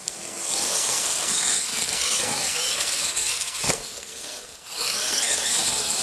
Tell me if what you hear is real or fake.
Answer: fake